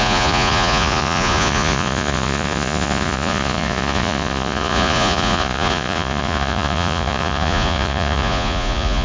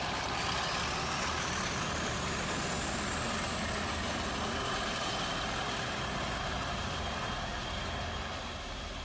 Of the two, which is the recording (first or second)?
second